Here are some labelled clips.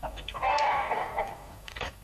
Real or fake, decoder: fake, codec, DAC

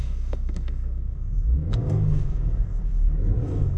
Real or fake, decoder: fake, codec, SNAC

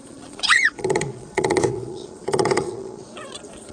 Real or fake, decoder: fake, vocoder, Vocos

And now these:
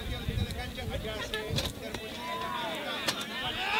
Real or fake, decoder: real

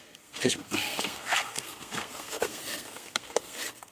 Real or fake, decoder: fake, codec, SNAC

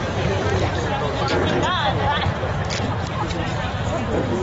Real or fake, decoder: real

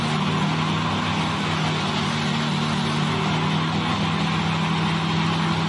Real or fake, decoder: real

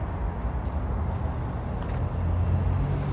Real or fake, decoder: real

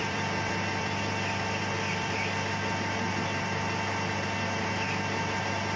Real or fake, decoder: fake, vocoder, BigVGAN v2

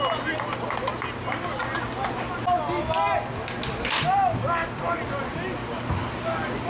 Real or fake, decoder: real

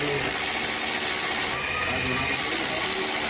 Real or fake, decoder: real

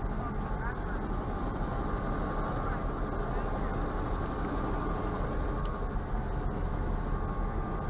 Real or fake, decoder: real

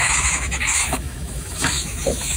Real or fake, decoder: fake, autoencoder, DAC-VAE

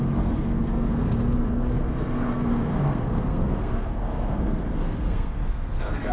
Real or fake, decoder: fake, codec, SNAC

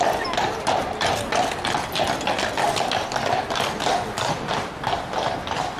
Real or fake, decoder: real